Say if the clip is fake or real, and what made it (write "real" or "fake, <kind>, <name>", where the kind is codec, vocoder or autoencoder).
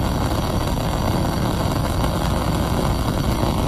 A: real